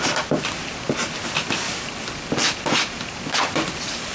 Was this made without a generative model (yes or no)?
no